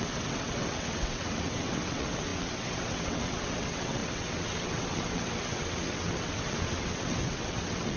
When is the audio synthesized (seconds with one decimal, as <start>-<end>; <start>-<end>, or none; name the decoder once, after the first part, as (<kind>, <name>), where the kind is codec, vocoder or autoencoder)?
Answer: 0.0-8.0 (vocoder, WaveNeXt)